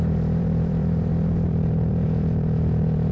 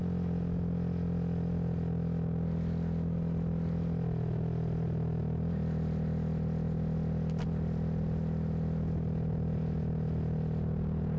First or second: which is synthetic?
first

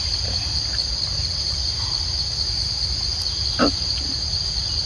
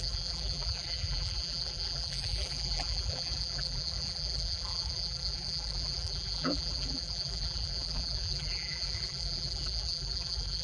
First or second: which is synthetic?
second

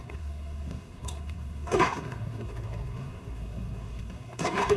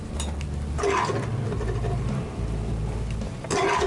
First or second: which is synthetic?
first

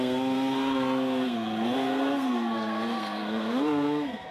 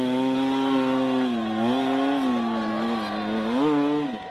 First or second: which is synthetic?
first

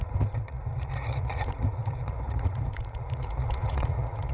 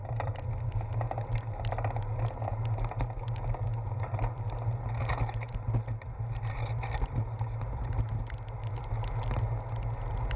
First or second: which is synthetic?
first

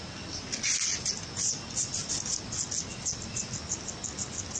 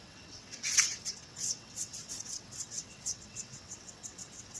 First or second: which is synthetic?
second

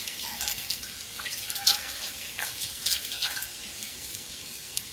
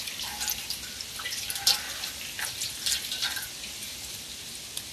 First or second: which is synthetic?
first